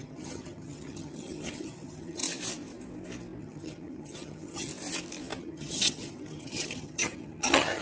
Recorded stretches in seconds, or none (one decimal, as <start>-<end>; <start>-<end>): 2.2-3.4; 4.7-5.4